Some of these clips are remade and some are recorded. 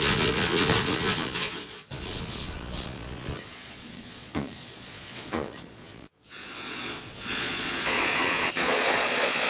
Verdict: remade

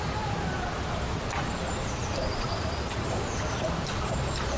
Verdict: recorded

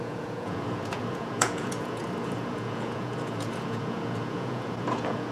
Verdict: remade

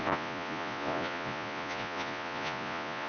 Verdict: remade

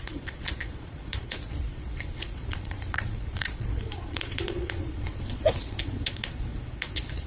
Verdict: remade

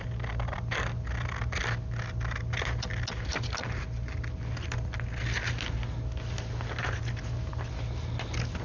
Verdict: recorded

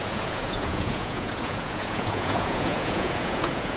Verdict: remade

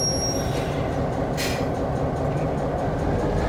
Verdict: recorded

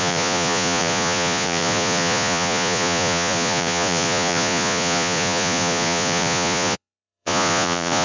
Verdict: remade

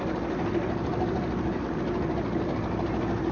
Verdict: recorded